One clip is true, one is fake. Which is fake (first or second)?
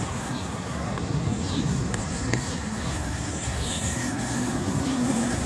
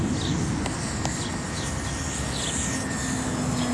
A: first